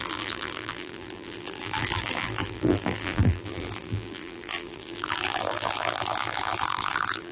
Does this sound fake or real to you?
fake